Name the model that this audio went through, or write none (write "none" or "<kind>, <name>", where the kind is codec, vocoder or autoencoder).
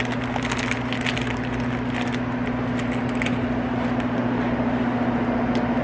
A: none